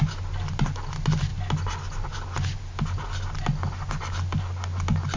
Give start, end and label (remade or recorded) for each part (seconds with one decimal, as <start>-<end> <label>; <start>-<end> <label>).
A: 0.0-5.2 recorded